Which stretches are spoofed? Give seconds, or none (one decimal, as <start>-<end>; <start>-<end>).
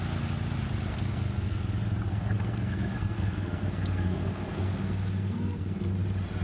0.9-1.6; 2.1-5.9